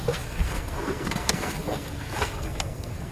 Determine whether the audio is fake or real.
fake